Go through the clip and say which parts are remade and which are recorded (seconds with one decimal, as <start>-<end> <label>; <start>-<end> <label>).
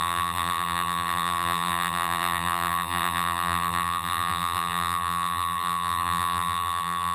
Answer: 0.0-7.1 remade